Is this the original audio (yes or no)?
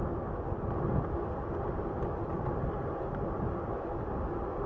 yes